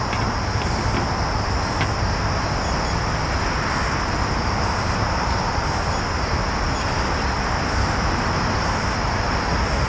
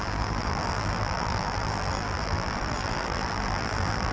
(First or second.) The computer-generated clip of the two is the second